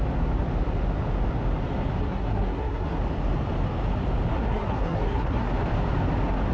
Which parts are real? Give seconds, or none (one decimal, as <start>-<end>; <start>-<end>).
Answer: 0.0-2.0; 3.0-4.3; 5.5-6.5